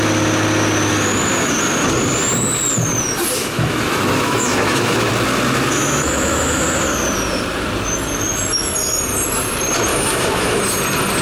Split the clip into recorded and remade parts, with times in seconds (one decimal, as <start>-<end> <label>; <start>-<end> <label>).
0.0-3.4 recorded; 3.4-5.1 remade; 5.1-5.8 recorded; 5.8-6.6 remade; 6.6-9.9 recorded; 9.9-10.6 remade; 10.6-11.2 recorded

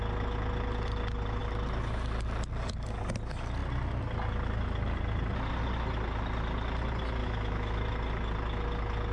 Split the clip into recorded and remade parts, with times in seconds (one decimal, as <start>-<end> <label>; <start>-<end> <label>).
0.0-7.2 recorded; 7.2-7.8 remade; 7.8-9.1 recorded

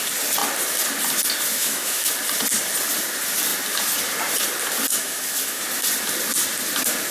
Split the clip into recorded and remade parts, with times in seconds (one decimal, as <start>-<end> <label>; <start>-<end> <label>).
0.0-1.5 recorded; 1.5-2.1 remade; 2.1-4.9 recorded; 4.9-5.6 remade; 5.6-7.1 recorded

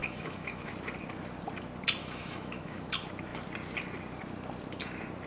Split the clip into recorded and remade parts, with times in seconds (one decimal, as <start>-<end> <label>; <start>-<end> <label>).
0.0-0.7 remade; 0.7-2.0 recorded; 2.0-2.9 remade; 2.9-5.3 recorded

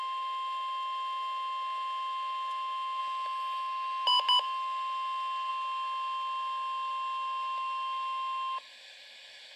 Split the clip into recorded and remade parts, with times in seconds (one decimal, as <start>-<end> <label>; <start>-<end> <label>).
0.0-3.0 remade; 3.0-5.5 recorded; 5.5-9.6 remade

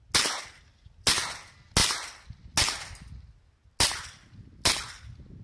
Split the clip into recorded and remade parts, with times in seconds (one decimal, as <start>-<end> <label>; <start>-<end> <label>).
0.0-5.4 recorded

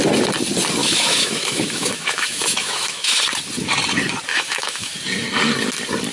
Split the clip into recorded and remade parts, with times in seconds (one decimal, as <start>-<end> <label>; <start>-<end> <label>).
0.0-0.8 recorded; 0.8-3.2 remade; 3.2-4.3 recorded; 4.3-4.9 remade; 4.9-6.1 recorded

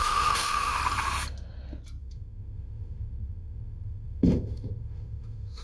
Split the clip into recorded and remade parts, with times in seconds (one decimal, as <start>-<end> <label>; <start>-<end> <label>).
0.0-0.8 remade; 0.8-2.0 recorded; 2.0-5.6 remade